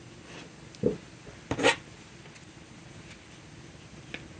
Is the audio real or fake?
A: real